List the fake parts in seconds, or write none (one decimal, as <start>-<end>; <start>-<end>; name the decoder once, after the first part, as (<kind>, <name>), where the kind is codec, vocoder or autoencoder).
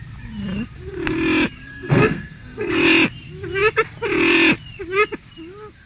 1.7-2.7 (codec, SNAC)